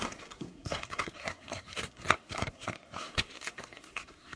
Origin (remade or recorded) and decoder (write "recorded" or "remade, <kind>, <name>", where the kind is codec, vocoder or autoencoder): remade, codec, SNAC